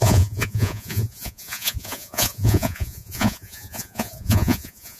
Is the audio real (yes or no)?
no